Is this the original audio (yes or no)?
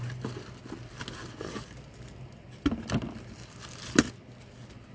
yes